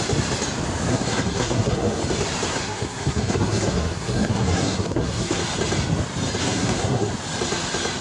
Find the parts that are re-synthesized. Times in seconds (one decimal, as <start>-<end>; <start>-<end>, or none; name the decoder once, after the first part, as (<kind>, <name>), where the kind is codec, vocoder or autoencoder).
0.9-2.0 (codec, SNAC); 2.5-5.4; 6.4-7.1